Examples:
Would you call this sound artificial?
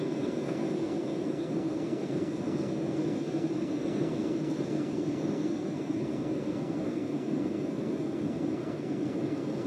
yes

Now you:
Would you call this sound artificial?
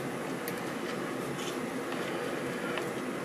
no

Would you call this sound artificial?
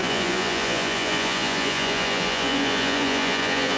yes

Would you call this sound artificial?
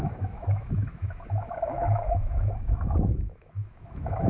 yes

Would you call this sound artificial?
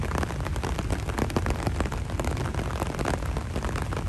no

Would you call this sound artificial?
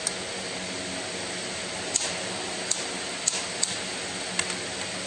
no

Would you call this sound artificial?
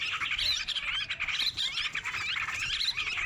no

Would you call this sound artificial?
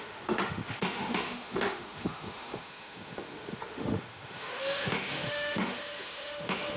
yes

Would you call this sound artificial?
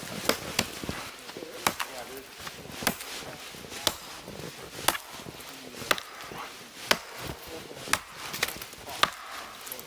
no